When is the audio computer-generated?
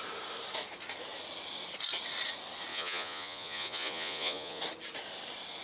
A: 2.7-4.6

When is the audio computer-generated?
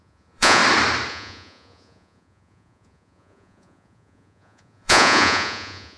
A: 0.0-0.6; 1.1-6.0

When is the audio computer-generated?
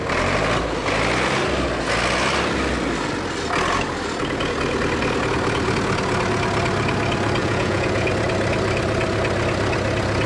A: 7.4-8.1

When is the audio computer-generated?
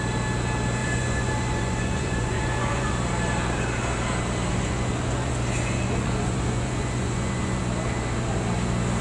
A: 0.8-2.9; 4.5-7.6